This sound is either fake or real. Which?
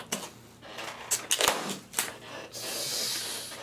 real